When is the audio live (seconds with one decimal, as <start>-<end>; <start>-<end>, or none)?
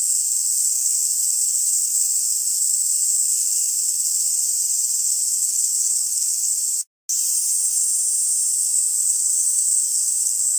4.3-5.1; 6.5-8.5